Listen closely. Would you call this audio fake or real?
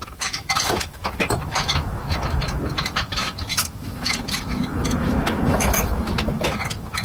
fake